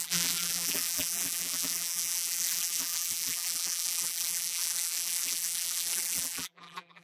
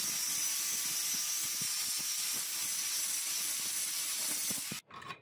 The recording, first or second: second